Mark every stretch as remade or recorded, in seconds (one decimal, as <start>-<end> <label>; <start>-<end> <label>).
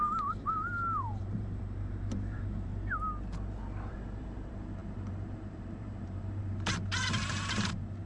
0.0-2.7 remade; 2.7-3.9 recorded; 3.9-8.1 remade